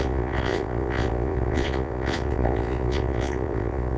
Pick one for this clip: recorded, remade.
remade